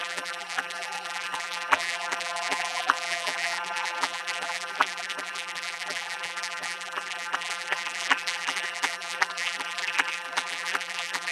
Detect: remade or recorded remade